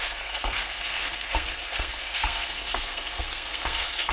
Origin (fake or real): fake